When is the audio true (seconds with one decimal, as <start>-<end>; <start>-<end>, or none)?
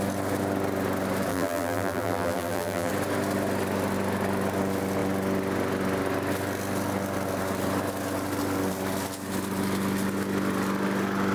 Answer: 0.0-1.3; 2.9-11.3